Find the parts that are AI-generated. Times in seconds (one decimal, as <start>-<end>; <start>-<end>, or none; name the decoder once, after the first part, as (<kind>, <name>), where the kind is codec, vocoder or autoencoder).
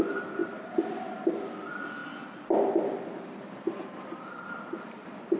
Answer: none